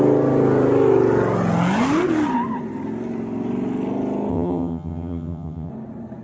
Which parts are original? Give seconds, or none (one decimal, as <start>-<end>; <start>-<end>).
0.0-4.3; 5.7-6.2